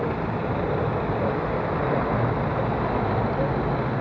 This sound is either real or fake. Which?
real